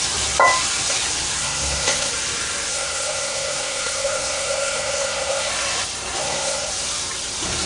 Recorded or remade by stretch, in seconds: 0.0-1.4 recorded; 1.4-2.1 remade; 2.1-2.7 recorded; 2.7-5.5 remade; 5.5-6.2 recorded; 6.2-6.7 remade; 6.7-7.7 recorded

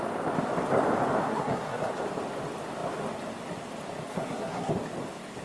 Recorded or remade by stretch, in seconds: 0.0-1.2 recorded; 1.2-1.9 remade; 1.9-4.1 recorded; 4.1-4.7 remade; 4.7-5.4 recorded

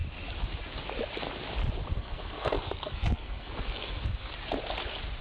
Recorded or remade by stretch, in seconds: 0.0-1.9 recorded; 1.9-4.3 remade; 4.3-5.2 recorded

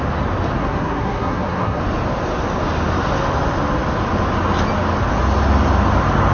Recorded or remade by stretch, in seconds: 0.0-0.6 recorded; 0.6-1.8 remade; 1.8-6.3 recorded